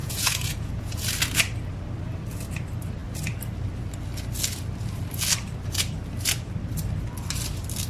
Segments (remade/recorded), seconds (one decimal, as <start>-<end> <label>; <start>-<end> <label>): 0.0-1.0 remade; 1.0-7.9 recorded